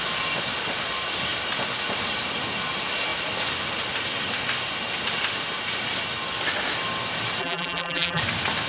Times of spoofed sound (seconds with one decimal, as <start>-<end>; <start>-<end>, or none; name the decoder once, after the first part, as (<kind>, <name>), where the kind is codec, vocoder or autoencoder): 7.4-8.2 (vocoder, BigVGAN v2)